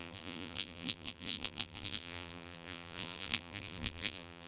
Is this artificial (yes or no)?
yes